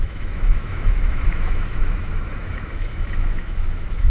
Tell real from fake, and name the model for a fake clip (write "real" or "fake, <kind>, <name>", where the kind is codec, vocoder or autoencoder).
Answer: fake, autoencoder, DAC-VAE